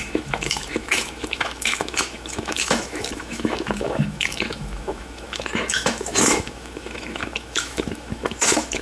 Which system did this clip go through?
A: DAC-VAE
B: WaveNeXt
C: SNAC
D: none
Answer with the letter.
A